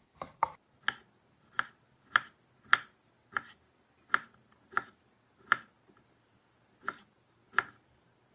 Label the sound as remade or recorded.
recorded